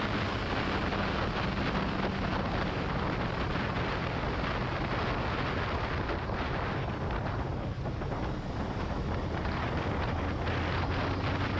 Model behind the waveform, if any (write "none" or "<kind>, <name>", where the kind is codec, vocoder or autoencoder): none